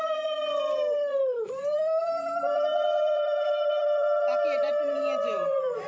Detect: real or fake fake